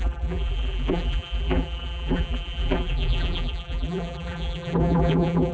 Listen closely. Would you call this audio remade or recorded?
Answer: remade